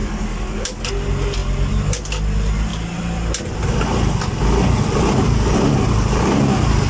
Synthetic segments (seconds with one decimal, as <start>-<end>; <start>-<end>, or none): 0.0-0.9